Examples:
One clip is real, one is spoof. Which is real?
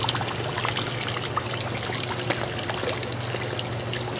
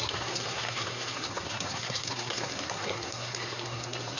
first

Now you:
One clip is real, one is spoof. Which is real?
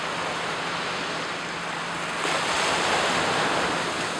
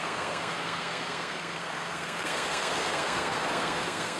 first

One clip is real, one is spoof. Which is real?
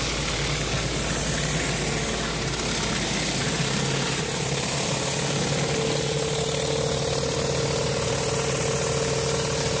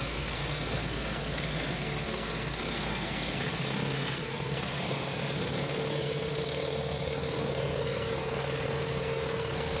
first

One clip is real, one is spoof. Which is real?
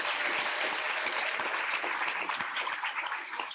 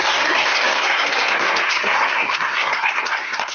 first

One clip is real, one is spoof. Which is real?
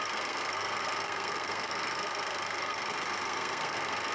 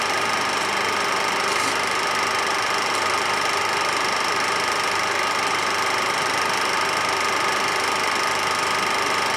second